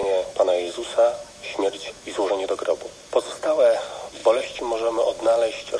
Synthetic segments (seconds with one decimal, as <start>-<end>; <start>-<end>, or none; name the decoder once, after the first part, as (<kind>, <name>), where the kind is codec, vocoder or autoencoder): 0.0-2.3 (autoencoder, DAC-VAE)